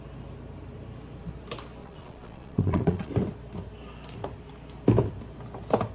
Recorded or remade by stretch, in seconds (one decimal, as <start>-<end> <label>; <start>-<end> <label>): 0.0-1.8 recorded; 1.8-3.1 remade; 3.1-5.9 recorded